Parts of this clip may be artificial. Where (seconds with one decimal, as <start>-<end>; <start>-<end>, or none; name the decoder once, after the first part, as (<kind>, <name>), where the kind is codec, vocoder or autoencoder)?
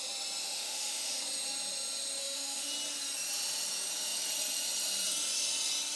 0.4-1.2 (autoencoder, DAC-VAE); 2.2-2.7